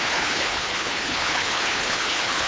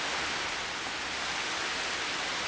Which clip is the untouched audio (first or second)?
second